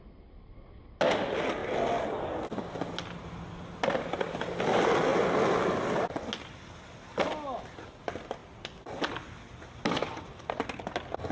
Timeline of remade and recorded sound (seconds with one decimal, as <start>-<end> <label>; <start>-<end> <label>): 0.0-11.3 recorded